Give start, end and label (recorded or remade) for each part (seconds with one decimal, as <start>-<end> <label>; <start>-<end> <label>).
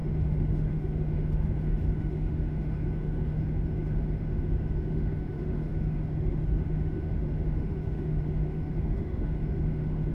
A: 0.0-10.1 remade